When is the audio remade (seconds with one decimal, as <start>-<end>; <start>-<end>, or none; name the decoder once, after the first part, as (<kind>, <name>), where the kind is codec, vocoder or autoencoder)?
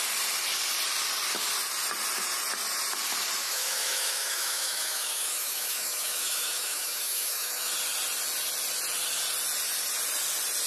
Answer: 3.4-7.7 (autoencoder, DAC-VAE)